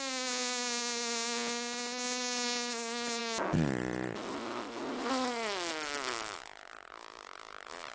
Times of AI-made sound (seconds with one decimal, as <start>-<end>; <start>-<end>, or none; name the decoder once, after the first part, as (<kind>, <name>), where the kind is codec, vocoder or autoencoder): none